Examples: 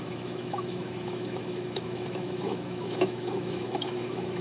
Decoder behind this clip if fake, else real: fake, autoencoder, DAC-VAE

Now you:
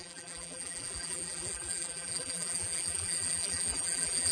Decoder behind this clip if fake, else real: fake, vocoder, BigVGAN v2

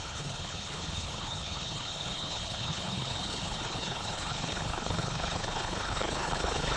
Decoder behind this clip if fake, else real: fake, codec, HILCodec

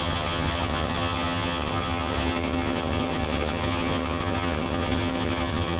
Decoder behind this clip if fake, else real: fake, vocoder, HiFi-GAN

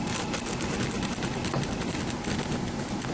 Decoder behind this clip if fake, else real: real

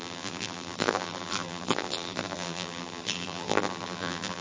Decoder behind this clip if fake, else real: fake, vocoder, BigVGAN v2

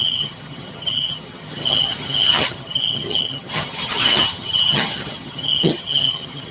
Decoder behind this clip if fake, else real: fake, vocoder, HiFi-GAN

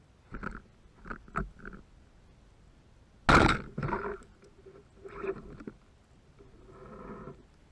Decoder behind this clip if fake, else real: real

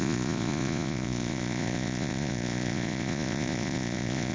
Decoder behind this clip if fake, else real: fake, vocoder, Vocos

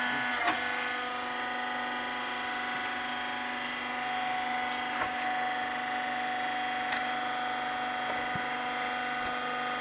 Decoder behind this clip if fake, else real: real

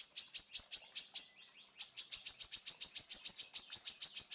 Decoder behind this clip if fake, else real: real